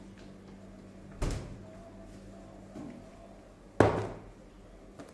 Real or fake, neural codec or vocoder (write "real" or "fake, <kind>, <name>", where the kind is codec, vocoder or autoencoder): real